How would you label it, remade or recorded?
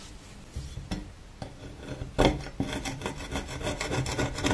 recorded